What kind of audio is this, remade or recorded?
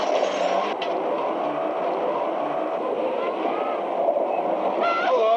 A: recorded